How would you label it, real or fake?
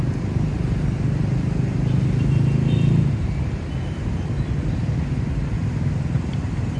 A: real